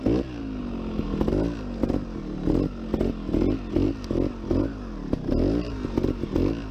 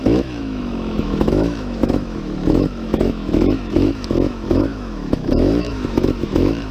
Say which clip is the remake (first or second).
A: second